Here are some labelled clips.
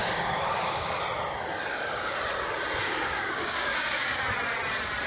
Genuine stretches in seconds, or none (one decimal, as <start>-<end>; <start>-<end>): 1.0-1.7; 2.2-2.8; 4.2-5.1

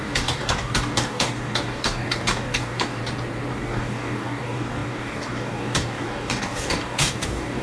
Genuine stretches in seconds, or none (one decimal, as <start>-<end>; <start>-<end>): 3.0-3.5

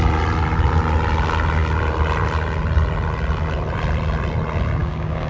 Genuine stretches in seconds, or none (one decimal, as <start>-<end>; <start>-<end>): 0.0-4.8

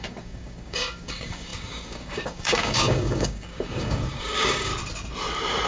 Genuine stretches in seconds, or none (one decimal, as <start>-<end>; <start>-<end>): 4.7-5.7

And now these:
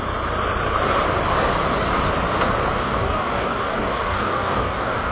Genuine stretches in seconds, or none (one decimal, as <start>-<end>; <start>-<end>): 0.0-2.8

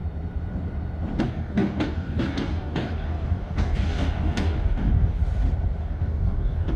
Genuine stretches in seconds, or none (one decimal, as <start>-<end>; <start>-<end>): 0.0-1.2; 5.2-5.8